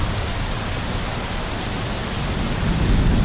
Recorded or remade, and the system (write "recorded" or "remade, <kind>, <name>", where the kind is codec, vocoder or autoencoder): recorded